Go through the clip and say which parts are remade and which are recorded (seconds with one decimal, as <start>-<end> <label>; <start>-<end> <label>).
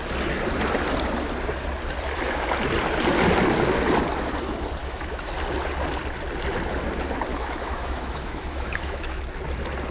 0.0-4.8 recorded; 4.8-5.3 remade; 5.3-7.3 recorded; 7.3-9.2 remade; 9.2-9.9 recorded